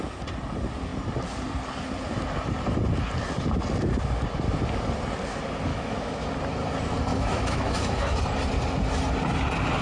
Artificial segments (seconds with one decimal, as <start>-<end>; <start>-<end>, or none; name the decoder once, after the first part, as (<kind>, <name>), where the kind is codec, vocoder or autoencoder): 5.7-6.3 (autoencoder, DAC-VAE); 7.1-8.2